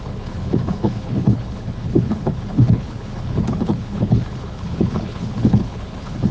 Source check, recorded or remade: remade